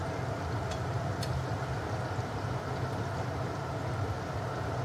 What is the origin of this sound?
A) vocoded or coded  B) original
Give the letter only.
B